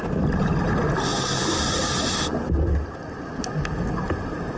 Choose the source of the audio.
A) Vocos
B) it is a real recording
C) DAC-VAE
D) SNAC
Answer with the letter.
B